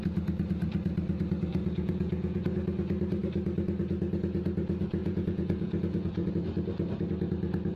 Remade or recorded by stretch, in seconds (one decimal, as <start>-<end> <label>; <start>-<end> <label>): 0.0-1.5 recorded; 1.5-2.4 remade; 2.4-5.0 recorded; 5.0-6.3 remade; 6.3-7.8 recorded